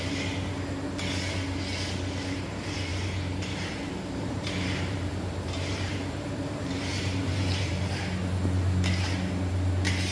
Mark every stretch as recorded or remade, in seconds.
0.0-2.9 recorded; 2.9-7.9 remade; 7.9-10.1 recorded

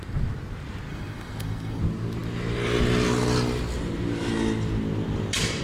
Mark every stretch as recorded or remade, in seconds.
0.0-0.9 recorded; 0.9-1.8 remade; 1.8-5.6 recorded

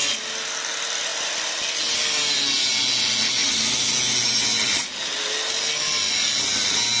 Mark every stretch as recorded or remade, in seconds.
0.0-7.0 recorded

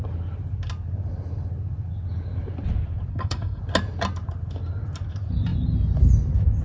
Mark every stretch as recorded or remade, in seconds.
0.0-3.1 recorded; 3.1-3.6 remade; 3.6-6.6 recorded

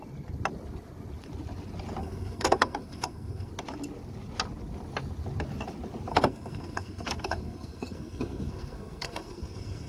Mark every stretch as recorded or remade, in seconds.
0.0-2.0 recorded; 2.0-3.5 remade; 3.5-6.1 recorded; 6.1-9.9 remade

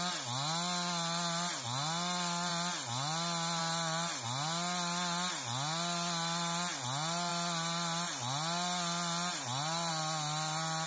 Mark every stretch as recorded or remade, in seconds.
0.0-10.9 recorded